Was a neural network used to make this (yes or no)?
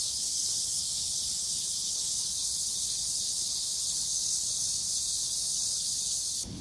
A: yes